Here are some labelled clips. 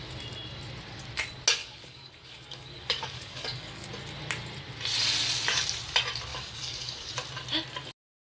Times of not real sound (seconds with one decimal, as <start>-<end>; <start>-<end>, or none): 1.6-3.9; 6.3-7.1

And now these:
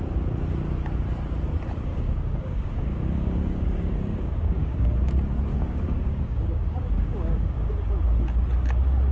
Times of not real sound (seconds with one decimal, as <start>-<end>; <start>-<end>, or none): 1.9-4.9; 5.5-7.7

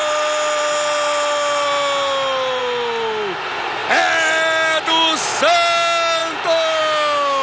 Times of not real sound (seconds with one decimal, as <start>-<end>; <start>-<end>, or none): none

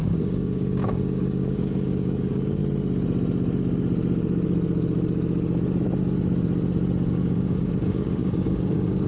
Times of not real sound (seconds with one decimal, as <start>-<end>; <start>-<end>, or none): 0.0-2.6; 7.1-9.1